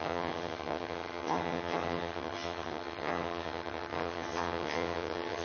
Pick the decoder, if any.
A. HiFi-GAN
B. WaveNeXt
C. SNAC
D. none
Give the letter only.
A